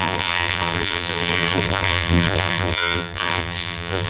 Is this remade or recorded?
remade